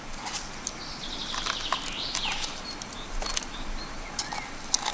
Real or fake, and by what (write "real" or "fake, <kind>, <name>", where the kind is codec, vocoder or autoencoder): real